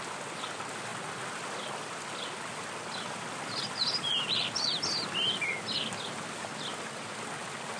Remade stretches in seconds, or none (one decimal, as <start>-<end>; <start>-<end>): 6.7-7.2